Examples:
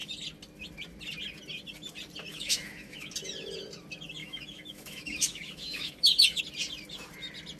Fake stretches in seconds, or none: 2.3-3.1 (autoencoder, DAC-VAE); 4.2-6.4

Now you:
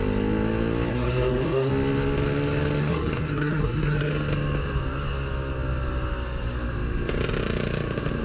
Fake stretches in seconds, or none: 0.9-1.7 (codec, SNAC); 2.8-4.1